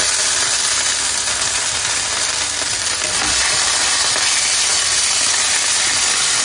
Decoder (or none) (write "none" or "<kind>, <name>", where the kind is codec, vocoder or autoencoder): none